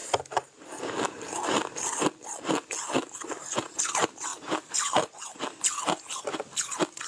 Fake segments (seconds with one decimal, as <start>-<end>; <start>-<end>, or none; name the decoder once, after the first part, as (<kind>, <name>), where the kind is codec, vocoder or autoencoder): none